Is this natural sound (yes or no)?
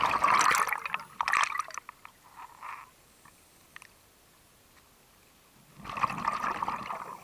yes